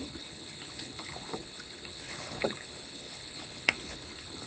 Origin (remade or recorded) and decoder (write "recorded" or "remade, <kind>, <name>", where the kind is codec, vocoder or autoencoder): remade, codec, HILCodec